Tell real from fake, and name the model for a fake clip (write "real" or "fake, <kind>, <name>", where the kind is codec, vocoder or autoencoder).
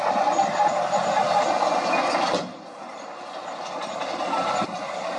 real